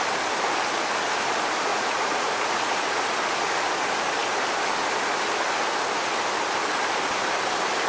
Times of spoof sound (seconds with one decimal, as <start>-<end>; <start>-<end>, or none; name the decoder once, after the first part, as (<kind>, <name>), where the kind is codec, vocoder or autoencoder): 1.7-3.0 (vocoder, Vocos)